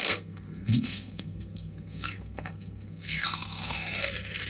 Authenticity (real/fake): fake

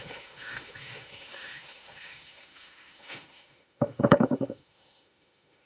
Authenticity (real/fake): fake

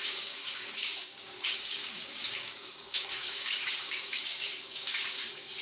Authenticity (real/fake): fake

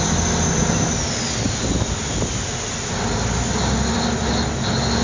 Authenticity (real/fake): real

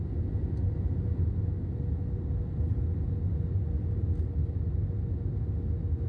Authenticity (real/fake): real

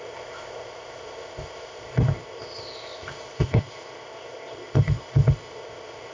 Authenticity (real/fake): fake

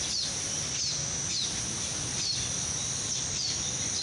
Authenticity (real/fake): real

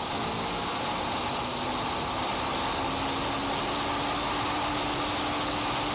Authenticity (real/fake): real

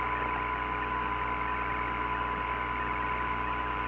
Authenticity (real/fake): real